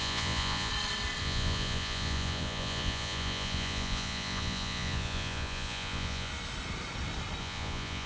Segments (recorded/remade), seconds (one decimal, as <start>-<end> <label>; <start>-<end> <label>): 0.0-0.7 remade; 0.7-1.2 recorded; 1.2-6.3 remade; 6.3-7.4 recorded; 7.4-8.1 remade